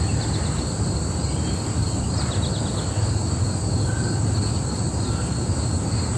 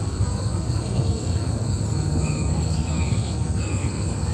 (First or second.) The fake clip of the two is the second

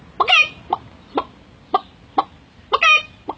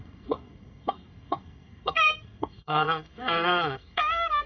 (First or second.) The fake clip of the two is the second